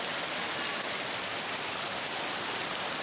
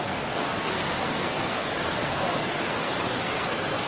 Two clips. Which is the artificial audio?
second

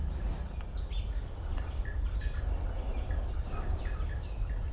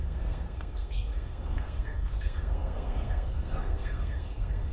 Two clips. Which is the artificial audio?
second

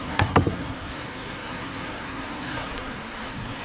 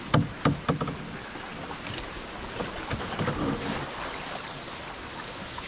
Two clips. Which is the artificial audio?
first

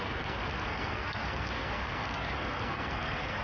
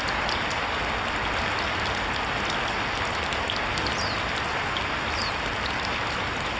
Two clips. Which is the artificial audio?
first